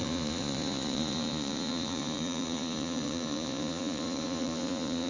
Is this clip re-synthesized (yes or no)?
yes